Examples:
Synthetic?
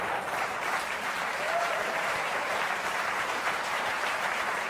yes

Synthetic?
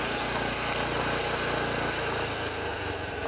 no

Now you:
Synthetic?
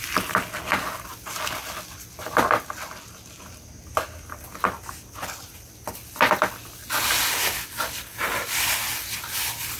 no